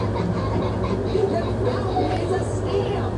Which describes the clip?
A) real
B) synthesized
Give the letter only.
B